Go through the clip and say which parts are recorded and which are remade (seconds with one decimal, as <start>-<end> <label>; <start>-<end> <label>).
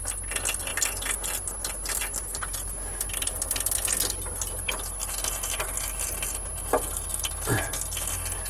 0.0-8.5 recorded